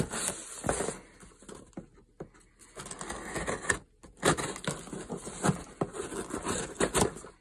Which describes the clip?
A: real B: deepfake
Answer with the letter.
A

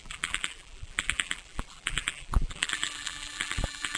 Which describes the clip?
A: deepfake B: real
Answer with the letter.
A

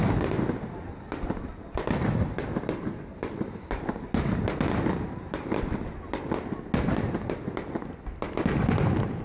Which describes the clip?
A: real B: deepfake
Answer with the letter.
A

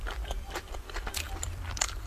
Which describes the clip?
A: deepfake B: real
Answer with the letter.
A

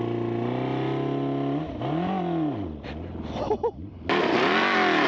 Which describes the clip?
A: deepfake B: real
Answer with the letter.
B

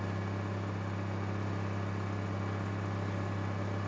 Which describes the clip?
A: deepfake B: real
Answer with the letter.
B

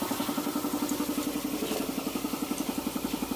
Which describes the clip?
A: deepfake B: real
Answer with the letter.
B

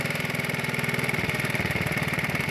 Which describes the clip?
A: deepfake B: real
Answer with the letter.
A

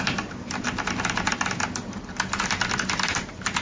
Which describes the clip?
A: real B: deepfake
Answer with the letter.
B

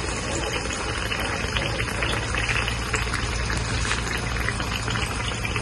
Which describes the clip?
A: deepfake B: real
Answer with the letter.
B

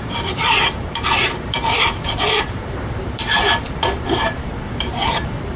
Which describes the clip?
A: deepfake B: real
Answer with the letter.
A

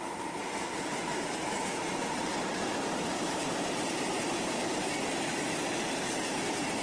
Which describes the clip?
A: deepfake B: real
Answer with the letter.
A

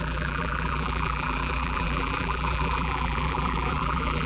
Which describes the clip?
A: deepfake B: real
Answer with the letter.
A